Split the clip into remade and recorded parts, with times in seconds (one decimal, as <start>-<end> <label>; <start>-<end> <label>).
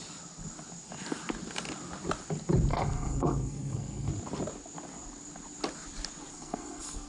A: 0.0-2.7 recorded; 2.7-4.1 remade; 4.1-6.3 recorded; 6.3-7.1 remade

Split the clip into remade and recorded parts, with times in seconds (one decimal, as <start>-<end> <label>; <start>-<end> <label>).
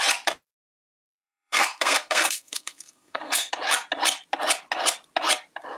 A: 0.0-1.0 recorded; 1.0-3.5 remade; 3.5-5.8 recorded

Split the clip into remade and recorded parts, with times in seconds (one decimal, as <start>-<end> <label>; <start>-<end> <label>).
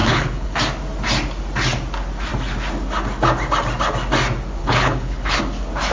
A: 0.0-0.6 remade; 0.6-4.6 recorded; 4.6-5.4 remade; 5.4-5.9 recorded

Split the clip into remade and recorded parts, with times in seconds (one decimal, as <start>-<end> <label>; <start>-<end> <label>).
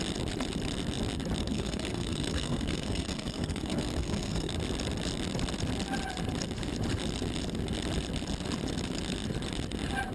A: 0.0-1.4 recorded; 1.4-4.5 remade; 4.5-10.1 recorded